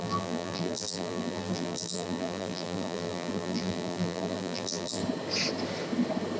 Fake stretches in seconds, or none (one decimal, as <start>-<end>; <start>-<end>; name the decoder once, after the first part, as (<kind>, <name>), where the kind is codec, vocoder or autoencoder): 0.0-5.0 (vocoder, BigVGAN v2)